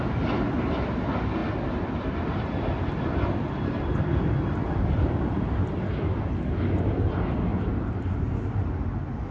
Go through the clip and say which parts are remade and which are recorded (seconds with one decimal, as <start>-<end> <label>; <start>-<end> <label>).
0.0-1.4 recorded; 1.4-6.3 remade; 6.3-7.5 recorded; 7.5-8.2 remade; 8.2-9.3 recorded